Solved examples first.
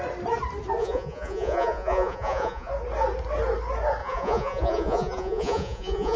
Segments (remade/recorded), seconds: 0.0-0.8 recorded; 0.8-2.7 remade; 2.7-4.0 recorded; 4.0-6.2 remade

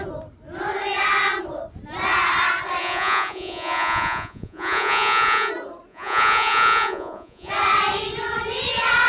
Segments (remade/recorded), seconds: 0.0-2.8 recorded; 2.8-5.5 remade; 5.5-5.9 recorded; 5.9-7.5 remade; 7.5-9.1 recorded

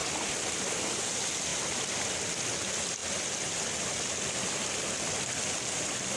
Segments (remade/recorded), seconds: 0.0-6.2 recorded

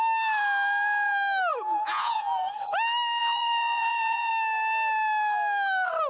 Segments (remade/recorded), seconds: 0.0-1.5 recorded; 1.5-2.5 remade; 2.5-3.2 recorded; 3.2-4.3 remade; 4.3-6.1 recorded

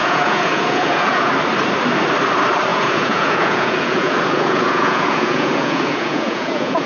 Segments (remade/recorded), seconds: 0.0-1.3 remade; 1.3-2.7 recorded; 2.7-6.9 remade

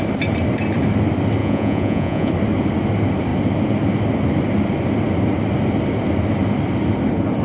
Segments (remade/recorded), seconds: 0.0-1.4 recorded; 1.4-2.3 remade; 2.3-7.4 recorded